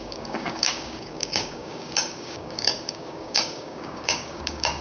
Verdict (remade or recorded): remade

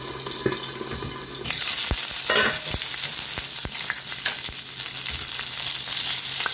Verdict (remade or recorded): recorded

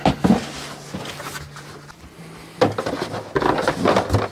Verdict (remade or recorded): recorded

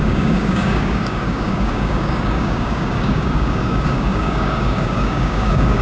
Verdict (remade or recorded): remade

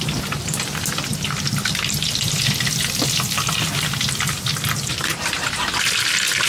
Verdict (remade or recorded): recorded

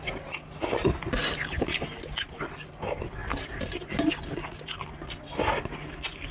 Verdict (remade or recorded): recorded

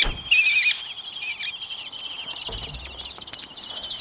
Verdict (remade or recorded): recorded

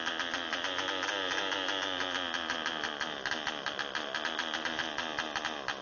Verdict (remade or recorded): recorded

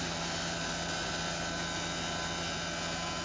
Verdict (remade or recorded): recorded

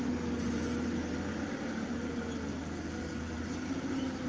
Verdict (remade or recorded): recorded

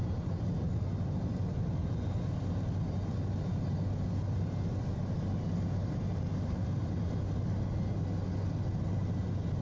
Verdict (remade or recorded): recorded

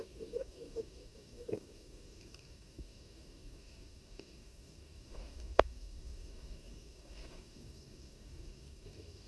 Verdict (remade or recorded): remade